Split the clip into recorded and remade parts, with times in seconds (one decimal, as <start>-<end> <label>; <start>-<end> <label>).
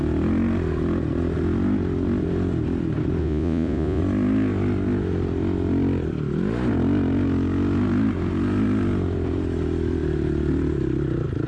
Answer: 0.0-3.2 recorded; 3.2-4.0 remade; 4.0-11.5 recorded